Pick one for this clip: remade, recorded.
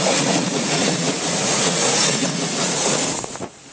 remade